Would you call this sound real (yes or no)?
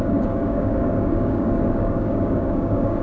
no